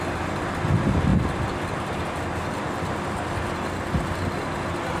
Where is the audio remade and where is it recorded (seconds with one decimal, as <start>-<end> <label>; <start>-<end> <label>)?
0.0-1.1 recorded; 1.1-4.1 remade; 4.1-5.0 recorded